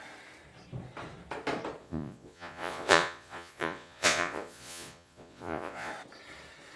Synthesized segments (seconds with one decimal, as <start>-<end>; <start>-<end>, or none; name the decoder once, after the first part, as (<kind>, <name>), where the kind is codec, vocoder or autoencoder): 1.8-5.9 (vocoder, Vocos)